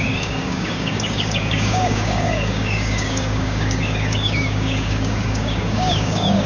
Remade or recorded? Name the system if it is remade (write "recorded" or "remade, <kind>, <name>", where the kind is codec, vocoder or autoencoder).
remade, codec, DAC